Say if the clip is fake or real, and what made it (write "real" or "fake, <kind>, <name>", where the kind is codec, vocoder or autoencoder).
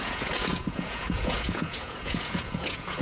fake, vocoder, Vocos